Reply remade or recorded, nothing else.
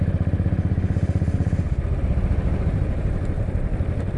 recorded